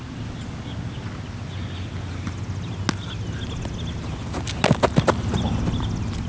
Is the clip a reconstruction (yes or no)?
no